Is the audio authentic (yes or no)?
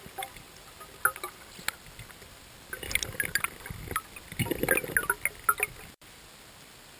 yes